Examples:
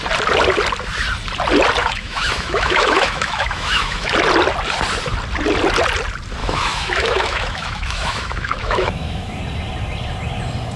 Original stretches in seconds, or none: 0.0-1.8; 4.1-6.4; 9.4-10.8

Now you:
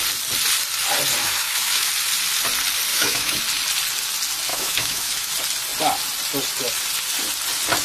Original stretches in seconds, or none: 0.0-1.2; 1.9-2.9; 3.4-4.5; 5.3-7.8

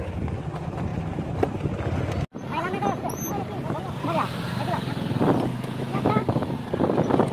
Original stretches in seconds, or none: 0.0-5.5; 6.5-7.3

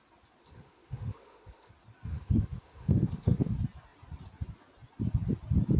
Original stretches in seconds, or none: 0.0-0.4; 1.7-2.1; 3.5-5.8

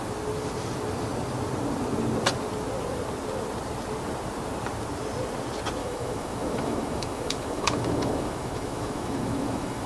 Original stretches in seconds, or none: 0.0-5.8

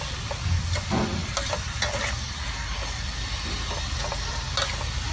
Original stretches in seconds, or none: 0.0-5.1